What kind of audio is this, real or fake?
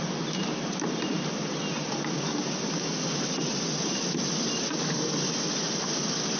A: real